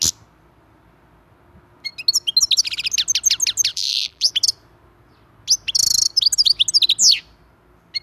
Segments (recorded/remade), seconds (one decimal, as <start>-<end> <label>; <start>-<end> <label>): 0.0-3.7 recorded; 3.7-4.3 remade; 4.3-8.0 recorded